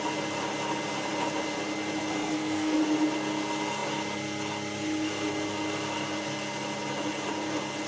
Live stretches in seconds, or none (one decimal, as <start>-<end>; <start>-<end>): 0.0-2.2; 2.8-7.9